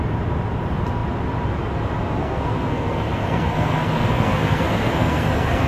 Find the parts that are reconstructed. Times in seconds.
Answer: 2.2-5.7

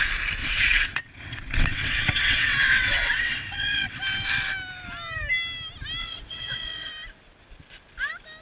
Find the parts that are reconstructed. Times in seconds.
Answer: 0.4-4.0; 6.0-6.9

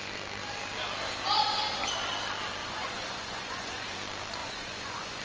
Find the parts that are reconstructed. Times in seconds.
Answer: 2.6-4.0; 4.4-5.2

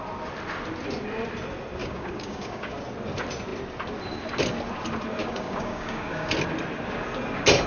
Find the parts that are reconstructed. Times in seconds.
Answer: 1.8-2.8; 5.2-6.3

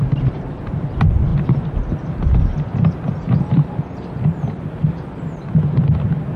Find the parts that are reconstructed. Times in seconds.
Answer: none

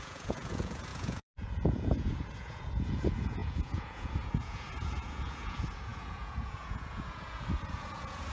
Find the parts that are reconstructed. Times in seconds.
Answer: 0.0-8.3

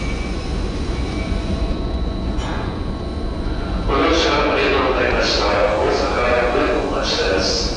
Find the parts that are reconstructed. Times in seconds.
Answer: 0.0-7.8